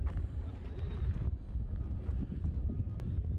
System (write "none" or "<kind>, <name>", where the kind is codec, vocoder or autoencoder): none